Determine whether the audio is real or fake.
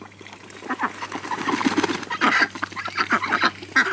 real